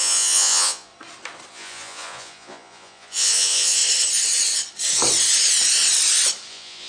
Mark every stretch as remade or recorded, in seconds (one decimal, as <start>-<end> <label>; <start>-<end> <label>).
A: 0.0-0.9 remade; 0.9-1.5 recorded; 1.5-3.8 remade; 3.8-6.5 recorded; 6.5-6.9 remade